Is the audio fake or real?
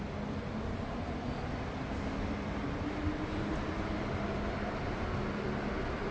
real